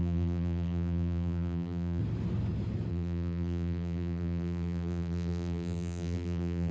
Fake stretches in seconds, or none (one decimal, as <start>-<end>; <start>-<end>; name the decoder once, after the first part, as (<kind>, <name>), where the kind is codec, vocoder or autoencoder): 0.0-2.0 (vocoder, BigVGAN v2); 2.9-6.7